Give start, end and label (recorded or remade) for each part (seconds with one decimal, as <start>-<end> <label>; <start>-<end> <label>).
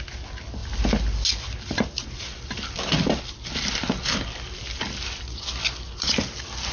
0.0-6.7 recorded